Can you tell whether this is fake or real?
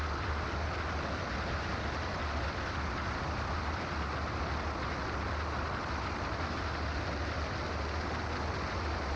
real